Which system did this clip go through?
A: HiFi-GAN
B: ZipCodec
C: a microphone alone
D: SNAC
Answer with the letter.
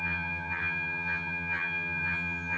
A